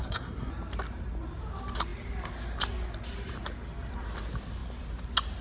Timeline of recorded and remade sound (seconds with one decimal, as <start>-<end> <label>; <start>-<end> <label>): 0.0-0.5 remade; 0.5-5.4 recorded